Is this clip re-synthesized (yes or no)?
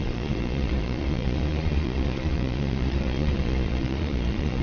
yes